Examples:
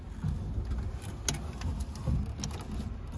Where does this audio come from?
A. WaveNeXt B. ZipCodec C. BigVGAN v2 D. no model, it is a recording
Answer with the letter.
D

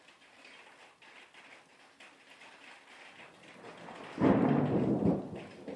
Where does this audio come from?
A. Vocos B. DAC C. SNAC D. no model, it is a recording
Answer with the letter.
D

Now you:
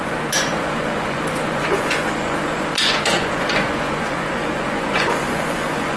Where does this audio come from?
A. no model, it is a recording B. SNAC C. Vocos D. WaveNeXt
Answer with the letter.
C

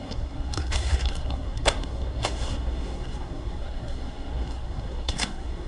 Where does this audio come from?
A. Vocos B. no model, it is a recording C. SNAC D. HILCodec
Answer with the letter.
C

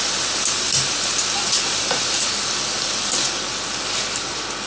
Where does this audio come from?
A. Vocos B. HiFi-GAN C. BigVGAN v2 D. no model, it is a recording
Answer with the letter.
D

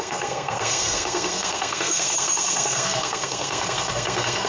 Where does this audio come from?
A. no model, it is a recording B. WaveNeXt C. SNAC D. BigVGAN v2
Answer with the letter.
C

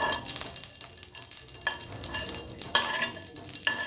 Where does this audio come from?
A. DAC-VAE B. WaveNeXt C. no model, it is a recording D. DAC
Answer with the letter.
C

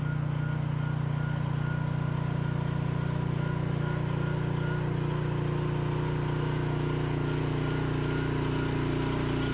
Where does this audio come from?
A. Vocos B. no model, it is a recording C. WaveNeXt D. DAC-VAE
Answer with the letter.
B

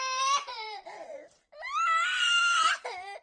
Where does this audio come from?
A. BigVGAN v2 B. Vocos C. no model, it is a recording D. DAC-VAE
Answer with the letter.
A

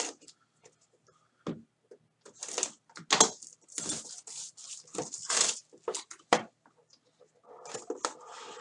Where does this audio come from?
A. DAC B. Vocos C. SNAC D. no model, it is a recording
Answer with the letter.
D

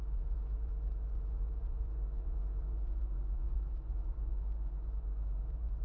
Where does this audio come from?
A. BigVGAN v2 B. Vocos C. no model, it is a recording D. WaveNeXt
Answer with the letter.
B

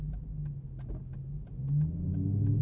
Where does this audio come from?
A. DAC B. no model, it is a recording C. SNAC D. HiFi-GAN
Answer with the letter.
B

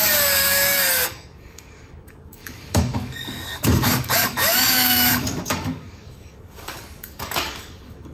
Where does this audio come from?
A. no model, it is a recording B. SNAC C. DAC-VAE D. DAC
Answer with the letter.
D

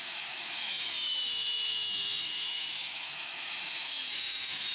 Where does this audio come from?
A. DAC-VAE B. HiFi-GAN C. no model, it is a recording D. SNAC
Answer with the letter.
A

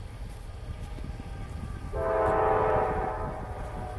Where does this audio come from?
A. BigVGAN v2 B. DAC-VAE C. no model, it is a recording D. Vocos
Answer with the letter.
C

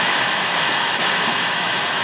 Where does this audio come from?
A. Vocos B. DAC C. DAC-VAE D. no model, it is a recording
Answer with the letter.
C